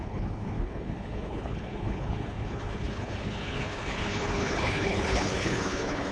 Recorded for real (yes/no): no